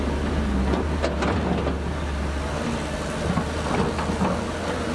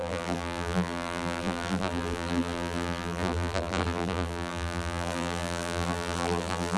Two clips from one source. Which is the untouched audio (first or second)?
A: first